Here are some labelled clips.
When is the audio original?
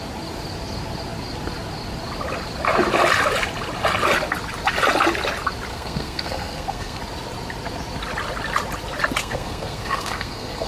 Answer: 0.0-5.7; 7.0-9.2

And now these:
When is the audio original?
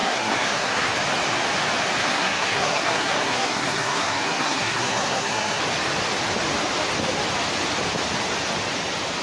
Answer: 0.9-2.0; 5.6-9.2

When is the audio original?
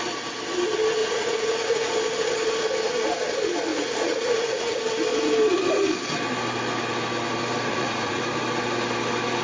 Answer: 0.0-1.0; 1.9-3.7; 4.8-7.7; 8.2-9.4